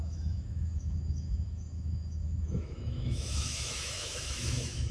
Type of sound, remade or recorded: remade